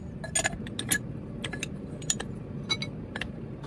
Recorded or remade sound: recorded